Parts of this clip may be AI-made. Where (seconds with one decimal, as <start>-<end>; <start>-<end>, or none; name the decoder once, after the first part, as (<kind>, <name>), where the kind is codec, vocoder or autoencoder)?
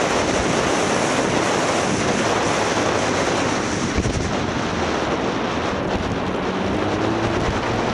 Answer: none